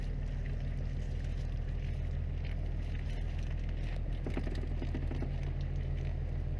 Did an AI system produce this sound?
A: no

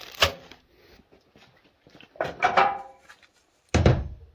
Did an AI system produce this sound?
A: no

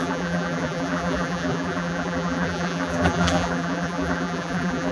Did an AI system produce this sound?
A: yes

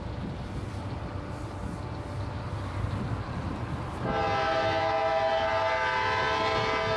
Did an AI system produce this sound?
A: no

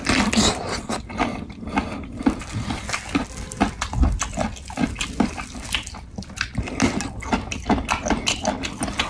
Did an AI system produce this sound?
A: no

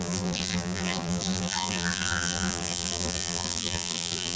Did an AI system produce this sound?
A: yes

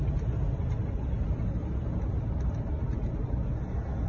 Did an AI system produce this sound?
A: no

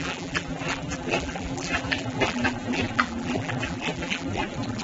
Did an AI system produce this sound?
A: yes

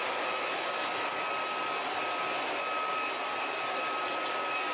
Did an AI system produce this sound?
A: no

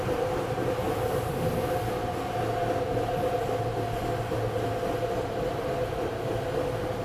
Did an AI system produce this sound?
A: no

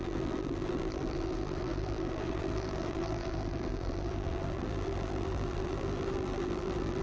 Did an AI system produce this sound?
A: yes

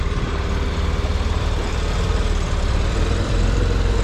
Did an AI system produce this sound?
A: yes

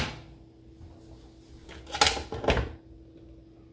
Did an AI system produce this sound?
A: no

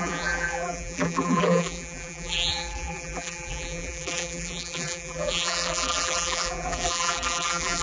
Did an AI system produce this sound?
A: yes